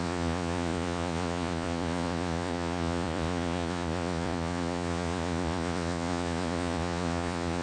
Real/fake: fake